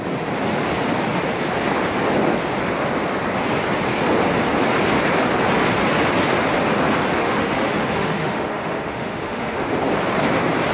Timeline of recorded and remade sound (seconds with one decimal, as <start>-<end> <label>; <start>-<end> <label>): 0.0-7.2 recorded; 7.2-9.7 remade; 9.7-10.7 recorded